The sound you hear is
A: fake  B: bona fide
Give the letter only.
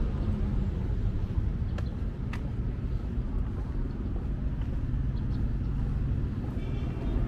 B